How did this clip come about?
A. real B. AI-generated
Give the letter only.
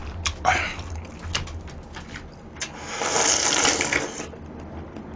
A